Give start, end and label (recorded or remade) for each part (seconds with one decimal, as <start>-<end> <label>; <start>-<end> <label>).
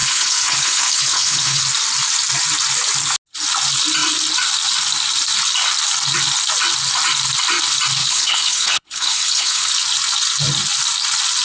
0.0-1.6 remade; 1.6-8.0 recorded; 8.0-9.7 remade; 9.7-11.4 recorded